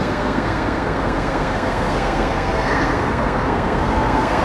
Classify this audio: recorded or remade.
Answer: remade